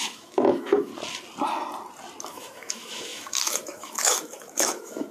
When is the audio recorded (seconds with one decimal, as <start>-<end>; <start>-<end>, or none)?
0.9-2.2